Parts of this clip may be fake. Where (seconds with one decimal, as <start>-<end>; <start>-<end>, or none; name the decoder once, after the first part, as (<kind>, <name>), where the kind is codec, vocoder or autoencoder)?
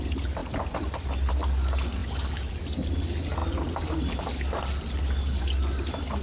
2.0-2.5 (vocoder, BigVGAN v2); 3.4-5.4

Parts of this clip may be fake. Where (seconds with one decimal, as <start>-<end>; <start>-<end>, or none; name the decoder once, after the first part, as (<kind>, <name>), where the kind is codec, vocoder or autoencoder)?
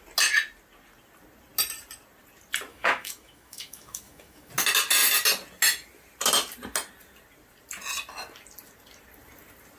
2.7-4.5 (autoencoder, DAC-VAE)